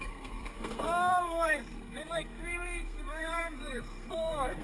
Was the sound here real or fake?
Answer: fake